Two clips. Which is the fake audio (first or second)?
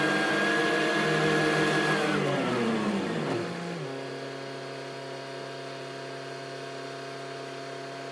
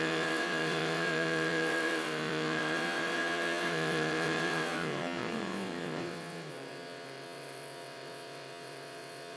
second